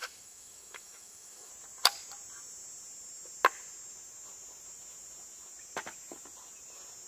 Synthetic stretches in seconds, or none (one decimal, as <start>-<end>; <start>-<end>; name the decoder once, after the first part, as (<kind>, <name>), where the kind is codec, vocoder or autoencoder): 0.0-1.5 (autoencoder, DAC-VAE)